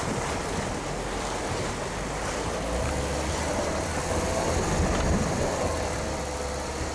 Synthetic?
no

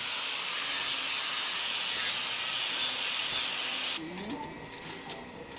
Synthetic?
no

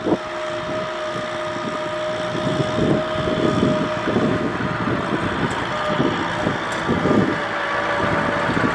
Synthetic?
no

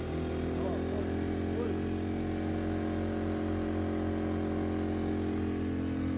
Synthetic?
no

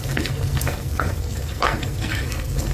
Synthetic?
yes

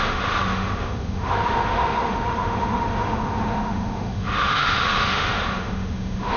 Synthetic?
yes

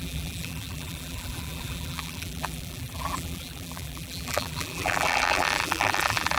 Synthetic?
yes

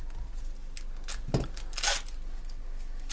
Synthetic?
no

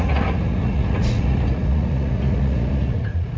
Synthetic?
yes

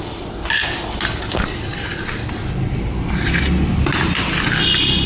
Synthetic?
no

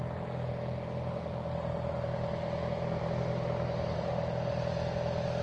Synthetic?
no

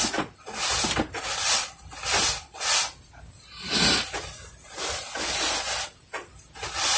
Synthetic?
no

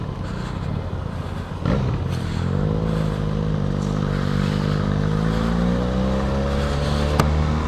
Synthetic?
no